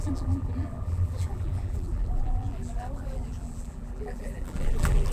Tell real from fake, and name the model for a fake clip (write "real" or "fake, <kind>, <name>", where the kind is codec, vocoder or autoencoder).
fake, vocoder, BigVGAN v2